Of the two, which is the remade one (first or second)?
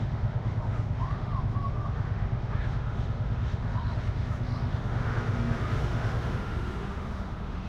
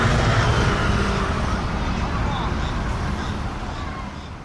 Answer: first